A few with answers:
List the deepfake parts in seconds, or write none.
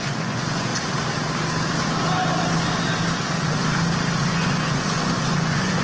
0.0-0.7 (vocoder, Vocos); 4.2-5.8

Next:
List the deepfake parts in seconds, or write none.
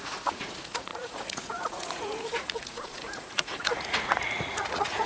0.0-5.1 (vocoder, Vocos)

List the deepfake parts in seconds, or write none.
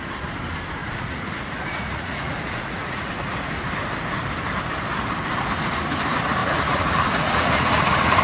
0.8-3.1 (vocoder, Vocos); 6.4-8.2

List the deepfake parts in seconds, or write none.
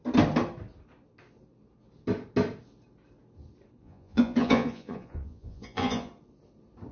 3.8-6.1 (vocoder, Vocos)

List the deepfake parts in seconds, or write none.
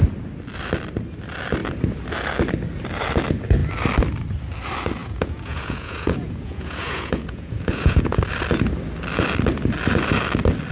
5.0-8.2 (vocoder, Vocos)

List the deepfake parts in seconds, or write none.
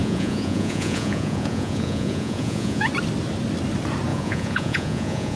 0.0-2.9 (vocoder, Vocos); 4.1-5.4